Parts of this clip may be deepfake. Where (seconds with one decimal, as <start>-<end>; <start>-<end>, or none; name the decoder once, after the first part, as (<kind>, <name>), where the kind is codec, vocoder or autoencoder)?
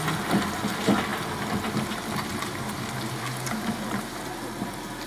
none